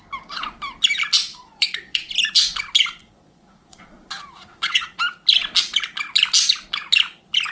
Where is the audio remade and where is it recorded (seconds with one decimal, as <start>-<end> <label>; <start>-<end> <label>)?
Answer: 0.0-1.3 recorded; 1.3-2.1 remade; 2.1-3.0 recorded; 3.0-5.0 remade; 5.0-7.5 recorded